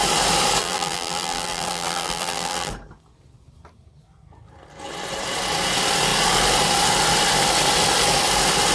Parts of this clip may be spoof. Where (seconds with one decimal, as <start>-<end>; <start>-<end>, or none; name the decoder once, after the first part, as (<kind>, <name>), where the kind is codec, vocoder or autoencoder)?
0.6-2.7 (vocoder, BigVGAN v2)